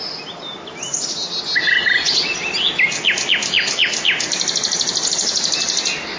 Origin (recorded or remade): recorded